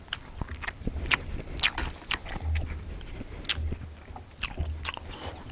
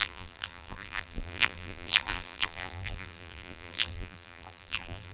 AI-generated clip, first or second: second